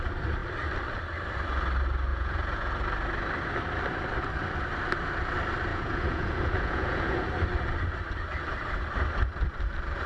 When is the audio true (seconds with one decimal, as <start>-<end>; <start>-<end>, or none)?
0.0-2.1; 2.7-5.7; 7.3-10.1